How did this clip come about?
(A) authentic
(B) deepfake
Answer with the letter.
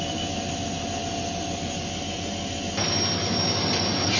A